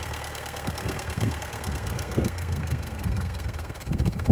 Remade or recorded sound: remade